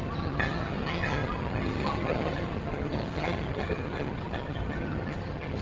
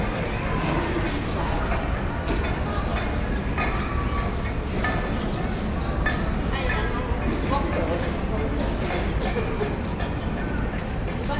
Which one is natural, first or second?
second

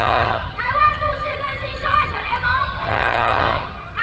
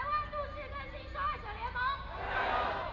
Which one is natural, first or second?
second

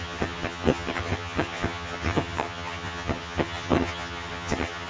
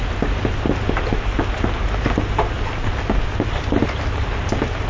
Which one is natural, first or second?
second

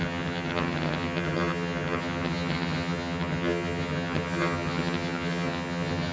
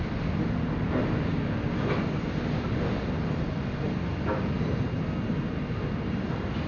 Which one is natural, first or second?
second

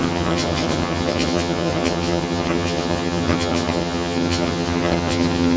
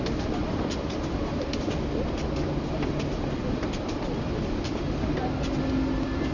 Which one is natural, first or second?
second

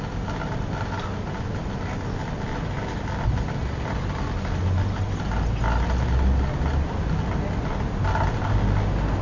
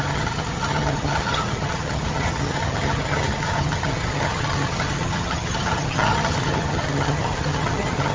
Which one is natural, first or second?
first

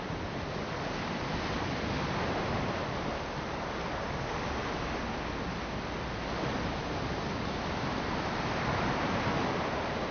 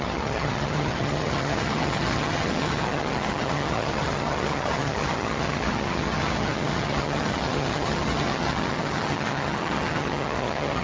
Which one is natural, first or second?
first